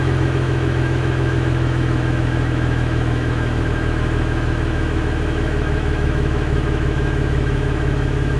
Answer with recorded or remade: remade